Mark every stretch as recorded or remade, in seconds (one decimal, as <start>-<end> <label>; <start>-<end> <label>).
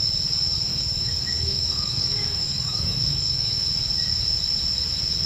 0.0-0.7 recorded; 0.7-3.7 remade; 3.7-5.3 recorded